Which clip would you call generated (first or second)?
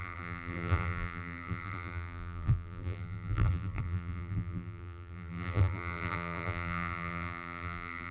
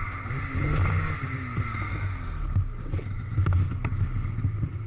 first